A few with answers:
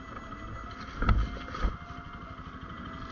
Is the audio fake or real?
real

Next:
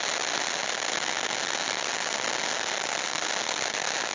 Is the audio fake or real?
real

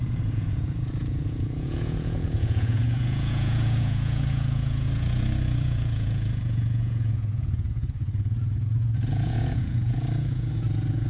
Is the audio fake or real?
fake